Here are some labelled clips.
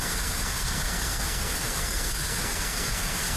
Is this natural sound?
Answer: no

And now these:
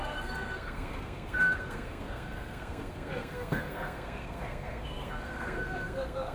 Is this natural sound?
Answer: no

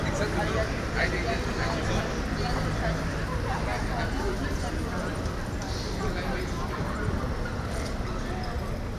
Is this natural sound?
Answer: yes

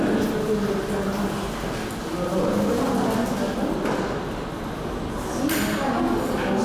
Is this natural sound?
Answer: yes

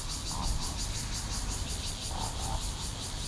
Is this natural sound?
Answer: yes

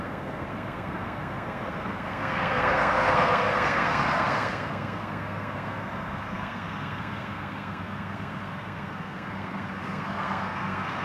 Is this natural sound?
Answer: no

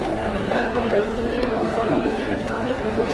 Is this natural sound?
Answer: no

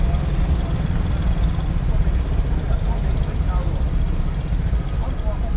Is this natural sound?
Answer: yes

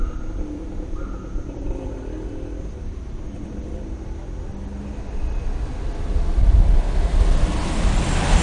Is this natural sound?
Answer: yes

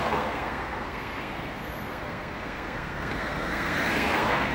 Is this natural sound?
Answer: no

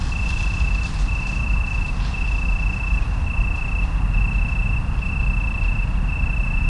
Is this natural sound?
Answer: yes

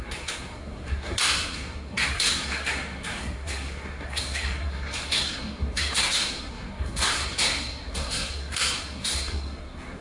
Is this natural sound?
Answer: no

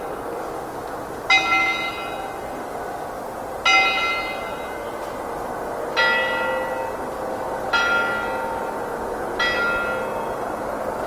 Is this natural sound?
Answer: yes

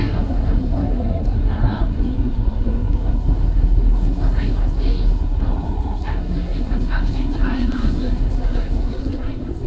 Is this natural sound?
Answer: no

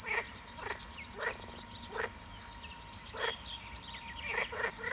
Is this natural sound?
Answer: yes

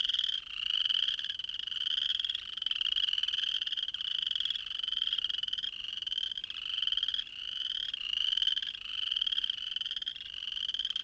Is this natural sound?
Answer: yes